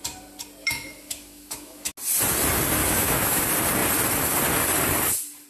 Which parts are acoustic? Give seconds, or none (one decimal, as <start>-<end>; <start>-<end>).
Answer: 0.0-0.6; 1.9-2.8; 3.4-5.5